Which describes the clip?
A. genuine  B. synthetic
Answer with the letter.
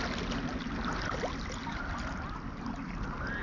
A